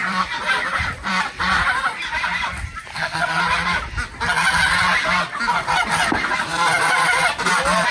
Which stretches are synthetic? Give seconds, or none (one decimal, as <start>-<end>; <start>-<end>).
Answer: 2.9-3.4